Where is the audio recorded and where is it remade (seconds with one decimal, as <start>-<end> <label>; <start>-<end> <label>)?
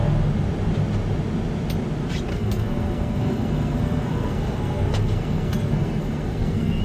0.0-2.3 recorded; 2.3-6.8 remade